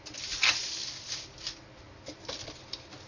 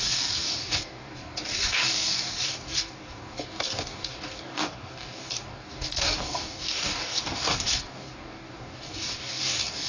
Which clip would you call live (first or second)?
first